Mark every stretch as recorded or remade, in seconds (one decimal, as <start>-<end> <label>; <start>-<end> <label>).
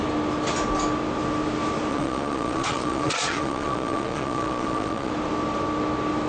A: 0.0-1.9 recorded; 1.9-5.1 remade; 5.1-6.3 recorded